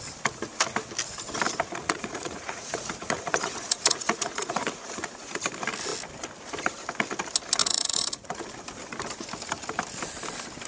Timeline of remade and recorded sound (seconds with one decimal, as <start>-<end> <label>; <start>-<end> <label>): 0.0-1.8 recorded; 1.8-5.3 remade; 5.3-7.6 recorded; 7.6-8.4 remade; 8.4-10.7 recorded